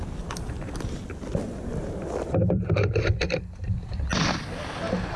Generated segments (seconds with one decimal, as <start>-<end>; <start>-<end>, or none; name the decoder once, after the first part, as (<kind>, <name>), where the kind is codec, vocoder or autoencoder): 1.4-4.0 (vocoder, BigVGAN v2)